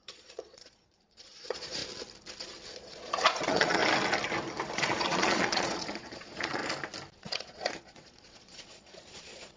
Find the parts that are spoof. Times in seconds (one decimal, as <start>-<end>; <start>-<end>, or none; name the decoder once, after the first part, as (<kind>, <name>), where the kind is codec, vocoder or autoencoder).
0.0-1.8 (vocoder, Vocos); 2.7-3.8; 4.7-6.6; 7.2-9.6